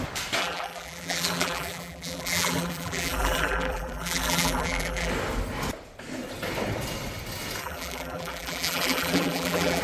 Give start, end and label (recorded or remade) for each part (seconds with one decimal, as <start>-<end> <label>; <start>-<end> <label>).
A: 0.0-0.4 recorded; 0.4-5.1 remade; 5.1-7.6 recorded; 7.6-9.8 remade